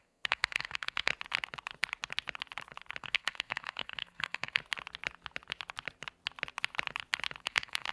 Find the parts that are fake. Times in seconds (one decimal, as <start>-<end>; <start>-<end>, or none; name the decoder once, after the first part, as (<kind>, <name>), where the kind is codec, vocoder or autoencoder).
0.0-1.1 (codec, SNAC); 3.0-4.6; 7.4-7.9